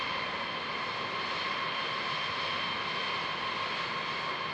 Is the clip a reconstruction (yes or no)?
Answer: no